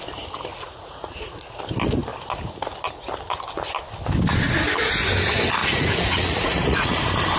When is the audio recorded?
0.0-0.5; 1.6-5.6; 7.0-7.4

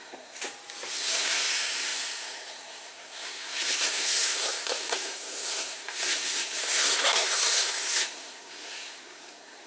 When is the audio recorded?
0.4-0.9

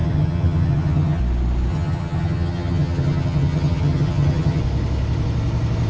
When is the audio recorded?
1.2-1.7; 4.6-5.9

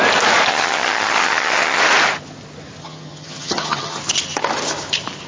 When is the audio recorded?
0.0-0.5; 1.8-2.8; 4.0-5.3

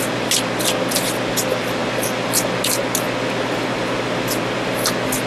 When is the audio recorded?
0.0-5.3

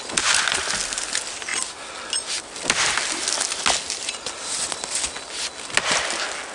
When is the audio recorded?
0.0-6.5

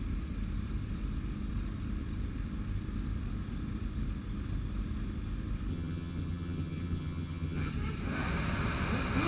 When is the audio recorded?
0.0-5.7; 7.7-9.3